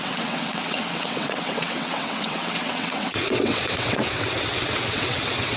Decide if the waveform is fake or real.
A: fake